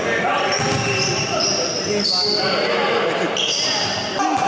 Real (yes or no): yes